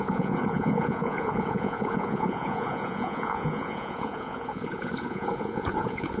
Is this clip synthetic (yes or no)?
yes